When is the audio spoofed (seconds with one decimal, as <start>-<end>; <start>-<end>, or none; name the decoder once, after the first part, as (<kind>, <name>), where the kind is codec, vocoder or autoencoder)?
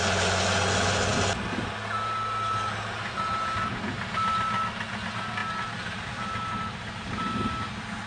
none